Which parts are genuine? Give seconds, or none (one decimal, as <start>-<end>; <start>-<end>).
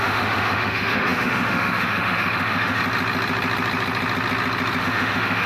2.8-4.8